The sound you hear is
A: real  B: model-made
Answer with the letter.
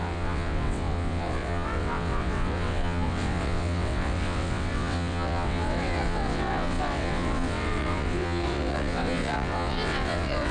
B